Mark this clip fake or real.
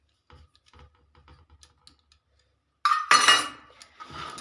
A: real